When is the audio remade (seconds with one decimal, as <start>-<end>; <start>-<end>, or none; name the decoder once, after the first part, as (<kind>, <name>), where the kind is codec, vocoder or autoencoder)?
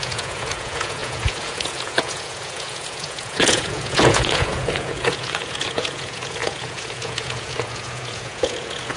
0.0-9.0 (vocoder, Vocos)